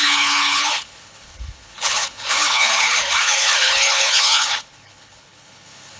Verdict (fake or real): fake